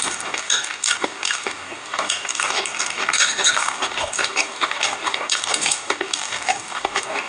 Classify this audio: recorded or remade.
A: remade